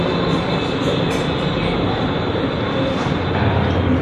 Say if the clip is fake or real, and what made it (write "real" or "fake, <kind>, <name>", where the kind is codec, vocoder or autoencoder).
real